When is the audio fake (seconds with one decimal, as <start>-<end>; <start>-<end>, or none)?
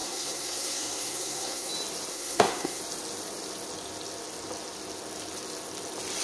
0.0-1.7; 2.1-2.8